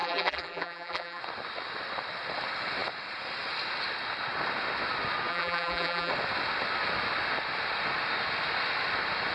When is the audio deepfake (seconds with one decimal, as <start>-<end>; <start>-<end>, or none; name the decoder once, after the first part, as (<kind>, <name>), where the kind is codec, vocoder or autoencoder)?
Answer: 0.0-1.2 (vocoder, BigVGAN v2); 5.3-6.1